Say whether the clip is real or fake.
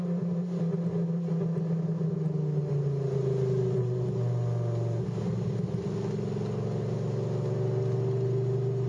real